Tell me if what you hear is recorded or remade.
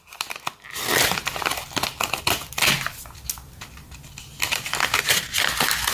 recorded